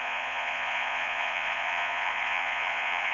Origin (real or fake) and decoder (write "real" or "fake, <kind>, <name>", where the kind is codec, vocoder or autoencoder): fake, vocoder, Vocos